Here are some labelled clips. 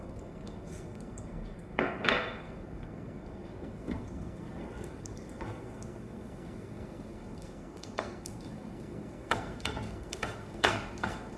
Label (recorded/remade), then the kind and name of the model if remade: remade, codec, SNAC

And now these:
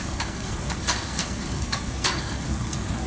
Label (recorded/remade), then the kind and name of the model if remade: remade, codec, SNAC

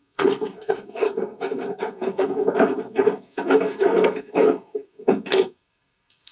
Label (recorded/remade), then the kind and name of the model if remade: remade, codec, SNAC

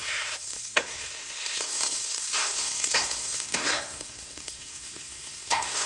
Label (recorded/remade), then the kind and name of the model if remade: remade, codec, SNAC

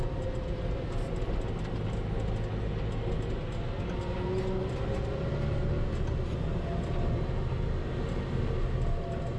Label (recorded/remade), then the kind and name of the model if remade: recorded